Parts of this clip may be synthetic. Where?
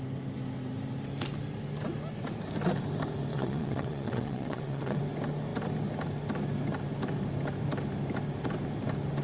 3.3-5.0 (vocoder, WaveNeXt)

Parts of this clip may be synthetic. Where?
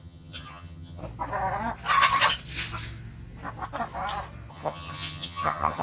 0.0-1.0 (vocoder, HiFi-GAN); 4.5-5.8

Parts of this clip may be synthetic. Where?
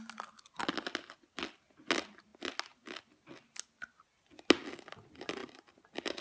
5.4-6.2 (vocoder, BigVGAN v2)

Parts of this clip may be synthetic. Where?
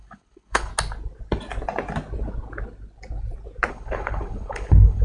0.0-0.7 (codec, HILCodec); 3.7-5.0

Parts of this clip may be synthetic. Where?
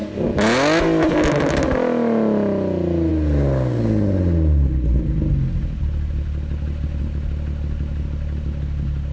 none